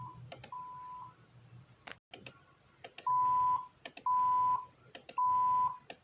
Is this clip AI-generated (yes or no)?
no